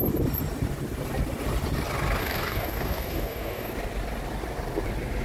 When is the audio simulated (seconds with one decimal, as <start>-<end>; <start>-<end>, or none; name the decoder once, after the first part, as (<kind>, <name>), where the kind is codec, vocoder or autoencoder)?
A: 2.2-3.7 (codec, DAC)